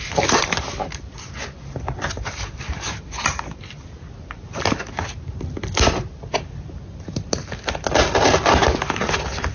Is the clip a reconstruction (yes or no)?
no